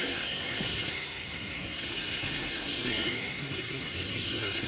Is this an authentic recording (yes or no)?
no